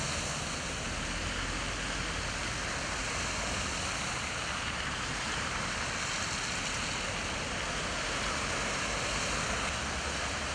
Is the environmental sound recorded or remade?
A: recorded